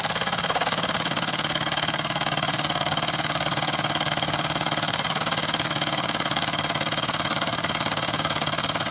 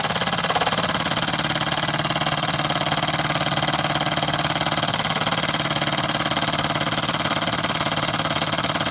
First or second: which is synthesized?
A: first